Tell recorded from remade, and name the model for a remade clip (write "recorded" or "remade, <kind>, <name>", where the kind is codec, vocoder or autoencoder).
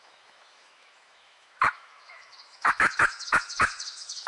remade, autoencoder, DAC-VAE